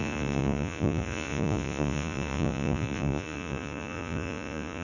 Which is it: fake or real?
fake